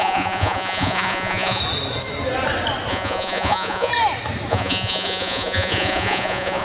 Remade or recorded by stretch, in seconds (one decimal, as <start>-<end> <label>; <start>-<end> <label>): 0.0-1.6 remade; 1.6-2.9 recorded; 2.9-3.9 remade; 3.9-4.5 recorded; 4.5-6.6 remade